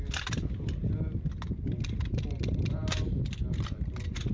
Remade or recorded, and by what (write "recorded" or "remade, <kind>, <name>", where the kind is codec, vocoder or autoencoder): recorded